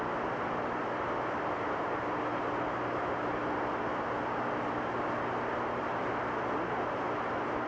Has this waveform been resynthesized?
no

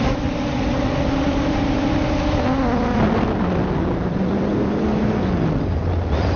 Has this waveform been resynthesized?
no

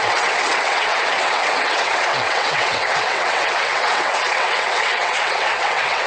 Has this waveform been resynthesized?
yes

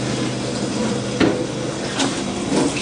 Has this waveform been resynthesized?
no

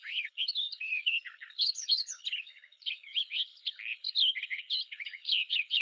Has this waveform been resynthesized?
yes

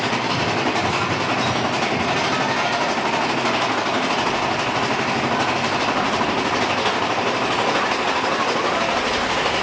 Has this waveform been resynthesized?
no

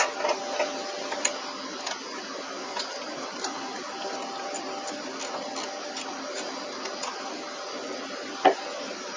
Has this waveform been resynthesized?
no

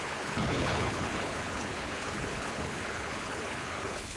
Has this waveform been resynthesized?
yes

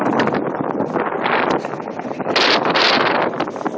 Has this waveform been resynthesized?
no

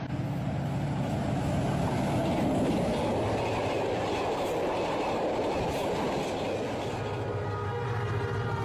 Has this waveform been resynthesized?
no